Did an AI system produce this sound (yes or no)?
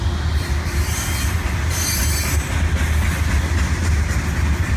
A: no